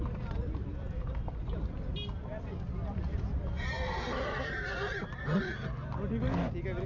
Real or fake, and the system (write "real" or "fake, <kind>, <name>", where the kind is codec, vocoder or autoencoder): real